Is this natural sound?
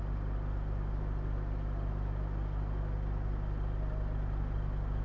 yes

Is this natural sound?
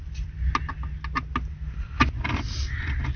yes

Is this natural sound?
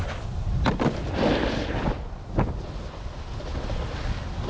yes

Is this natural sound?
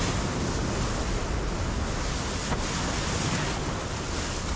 yes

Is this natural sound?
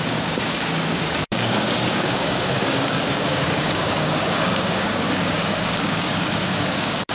no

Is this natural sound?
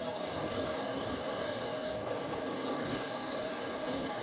no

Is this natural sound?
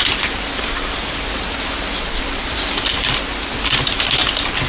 yes